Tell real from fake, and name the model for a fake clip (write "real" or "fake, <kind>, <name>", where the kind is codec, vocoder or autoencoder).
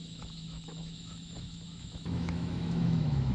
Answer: fake, autoencoder, DAC-VAE